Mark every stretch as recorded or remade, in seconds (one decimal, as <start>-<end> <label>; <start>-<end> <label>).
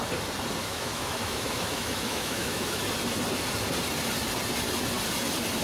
0.0-0.6 recorded; 0.6-2.8 remade; 2.8-5.6 recorded